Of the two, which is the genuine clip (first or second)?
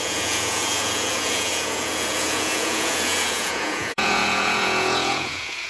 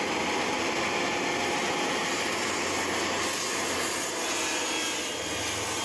second